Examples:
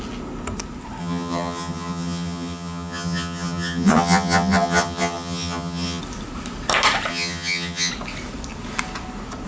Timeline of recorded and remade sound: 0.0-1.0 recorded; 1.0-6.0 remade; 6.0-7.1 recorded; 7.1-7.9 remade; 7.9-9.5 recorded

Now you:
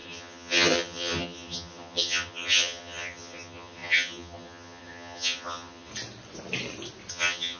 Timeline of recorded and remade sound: 0.0-5.9 remade; 5.9-7.1 recorded; 7.1-7.6 remade